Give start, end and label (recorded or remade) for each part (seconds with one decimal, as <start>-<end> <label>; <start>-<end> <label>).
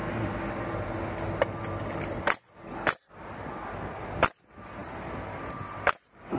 0.0-6.4 recorded